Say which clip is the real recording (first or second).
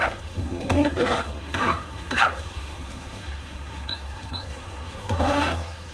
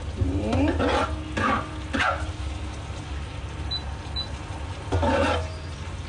second